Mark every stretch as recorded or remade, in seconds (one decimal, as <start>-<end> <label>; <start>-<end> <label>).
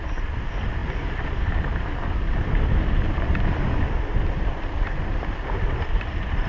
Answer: 0.0-6.5 recorded